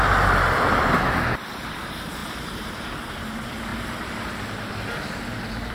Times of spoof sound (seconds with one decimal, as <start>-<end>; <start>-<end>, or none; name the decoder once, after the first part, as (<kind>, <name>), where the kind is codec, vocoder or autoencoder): 2.2-2.8 (vocoder, BigVGAN v2); 3.7-4.7